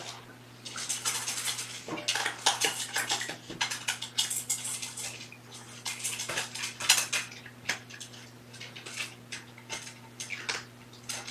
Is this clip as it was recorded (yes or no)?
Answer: yes